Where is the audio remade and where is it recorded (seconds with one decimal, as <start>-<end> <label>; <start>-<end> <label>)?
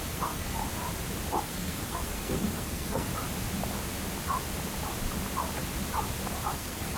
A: 0.0-0.6 remade; 0.6-1.4 recorded; 1.4-3.1 remade; 3.1-6.5 recorded; 6.5-7.0 remade